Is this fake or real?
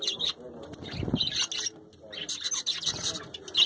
real